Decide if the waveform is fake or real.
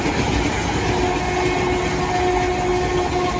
real